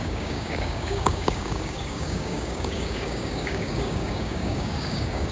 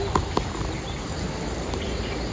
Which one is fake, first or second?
first